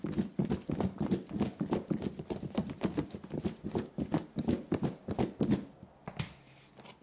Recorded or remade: recorded